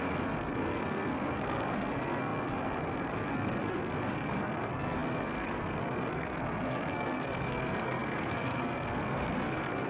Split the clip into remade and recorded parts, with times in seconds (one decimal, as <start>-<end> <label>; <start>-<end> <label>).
0.0-9.9 remade